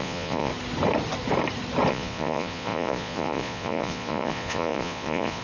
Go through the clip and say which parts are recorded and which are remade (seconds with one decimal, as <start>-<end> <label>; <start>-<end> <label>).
0.0-0.5 remade; 0.5-1.9 recorded; 1.9-5.4 remade